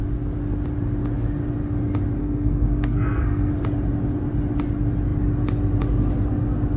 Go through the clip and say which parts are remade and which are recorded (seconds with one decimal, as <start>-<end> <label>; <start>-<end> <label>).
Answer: 0.0-2.2 recorded; 2.2-3.5 remade; 3.5-6.8 recorded